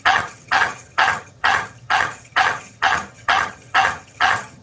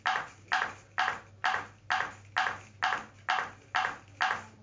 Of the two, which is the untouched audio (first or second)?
second